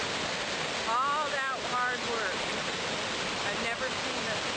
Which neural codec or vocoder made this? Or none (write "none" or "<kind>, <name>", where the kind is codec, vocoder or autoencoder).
none